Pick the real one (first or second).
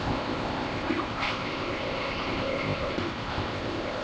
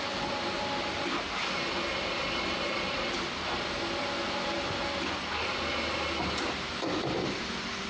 second